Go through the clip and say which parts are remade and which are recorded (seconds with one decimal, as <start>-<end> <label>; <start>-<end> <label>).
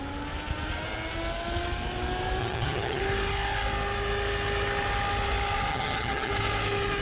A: 0.0-2.4 recorded; 2.4-3.0 remade; 3.0-5.7 recorded; 5.7-6.3 remade; 6.3-7.0 recorded